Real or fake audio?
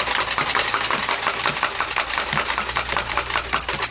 real